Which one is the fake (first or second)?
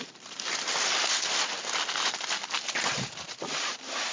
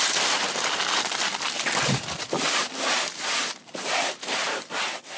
second